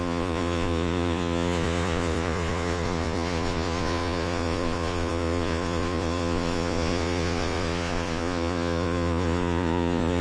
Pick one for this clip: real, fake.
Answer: fake